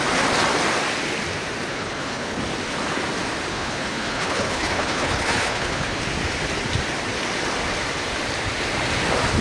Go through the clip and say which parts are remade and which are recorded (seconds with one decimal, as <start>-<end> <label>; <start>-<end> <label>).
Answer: 0.0-1.7 recorded; 1.7-2.4 remade; 2.4-3.5 recorded; 3.5-6.0 remade; 6.0-9.4 recorded